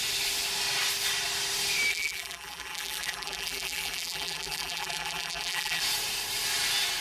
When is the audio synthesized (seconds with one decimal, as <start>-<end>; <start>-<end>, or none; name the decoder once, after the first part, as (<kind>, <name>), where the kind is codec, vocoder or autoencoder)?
1.9-5.8 (vocoder, BigVGAN v2)